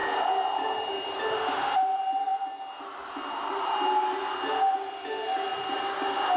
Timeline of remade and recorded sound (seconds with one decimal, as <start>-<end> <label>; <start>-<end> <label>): 0.0-6.4 recorded